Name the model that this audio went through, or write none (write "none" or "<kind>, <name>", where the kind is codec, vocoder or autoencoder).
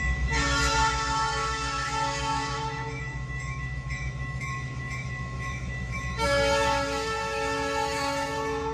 autoencoder, DAC-VAE